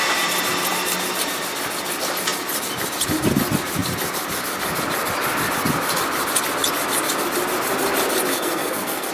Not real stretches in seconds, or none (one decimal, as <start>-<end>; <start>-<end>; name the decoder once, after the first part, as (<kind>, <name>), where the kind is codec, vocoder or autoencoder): 8.3-9.1 (codec, SNAC)